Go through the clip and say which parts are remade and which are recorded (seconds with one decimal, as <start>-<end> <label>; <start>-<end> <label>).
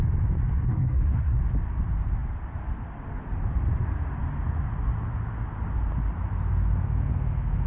0.0-0.7 recorded; 0.7-1.4 remade; 1.4-7.7 recorded